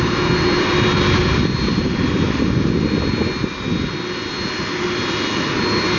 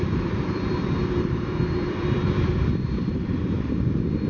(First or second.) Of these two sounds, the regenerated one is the second